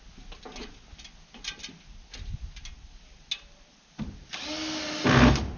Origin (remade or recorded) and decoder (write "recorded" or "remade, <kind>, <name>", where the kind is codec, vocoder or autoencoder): recorded